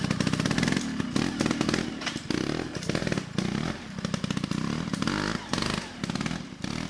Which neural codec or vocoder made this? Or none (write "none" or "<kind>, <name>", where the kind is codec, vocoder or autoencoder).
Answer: none